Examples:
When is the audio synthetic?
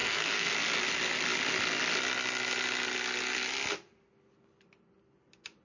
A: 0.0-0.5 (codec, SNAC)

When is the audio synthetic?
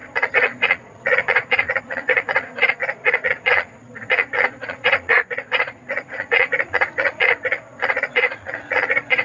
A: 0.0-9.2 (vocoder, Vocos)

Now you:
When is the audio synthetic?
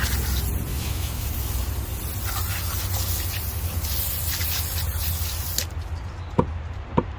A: 0.7-1.3 (autoencoder, DAC-VAE)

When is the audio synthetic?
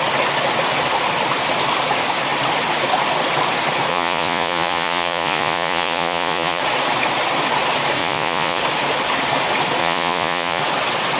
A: 3.9-6.6 (vocoder, Vocos); 8.0-8.6; 9.8-10.6